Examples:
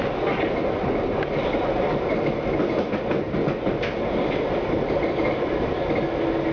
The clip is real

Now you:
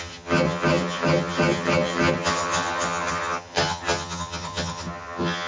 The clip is fake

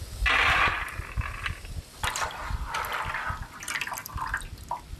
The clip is real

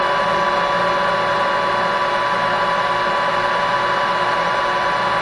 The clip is real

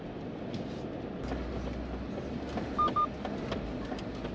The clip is real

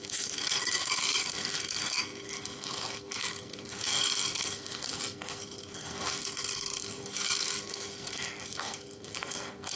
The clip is fake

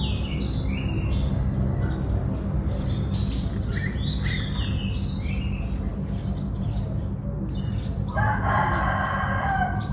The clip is real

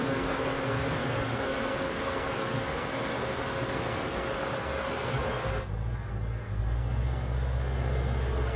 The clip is fake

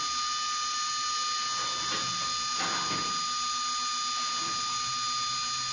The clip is real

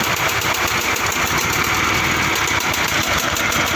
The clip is real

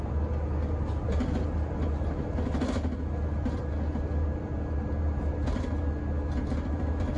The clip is real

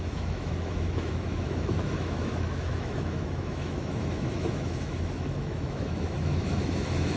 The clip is fake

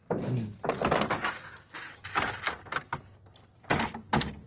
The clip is real